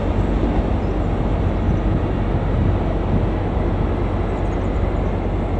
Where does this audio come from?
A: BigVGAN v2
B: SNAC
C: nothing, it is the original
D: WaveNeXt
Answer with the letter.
C